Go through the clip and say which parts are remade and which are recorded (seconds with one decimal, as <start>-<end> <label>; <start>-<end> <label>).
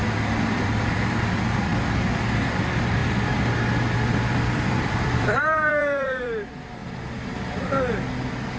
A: 0.0-1.7 remade; 1.7-2.6 recorded; 2.6-3.0 remade; 3.0-4.5 recorded; 4.5-6.8 remade; 6.8-7.6 recorded; 7.6-8.6 remade